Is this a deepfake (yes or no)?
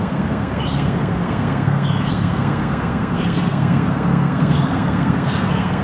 yes